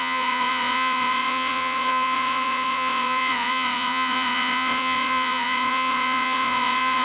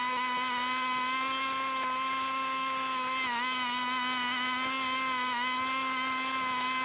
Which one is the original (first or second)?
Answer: second